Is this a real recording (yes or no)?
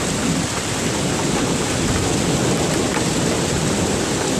yes